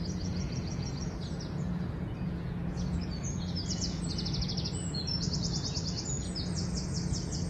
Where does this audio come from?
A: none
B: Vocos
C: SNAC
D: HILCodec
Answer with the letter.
B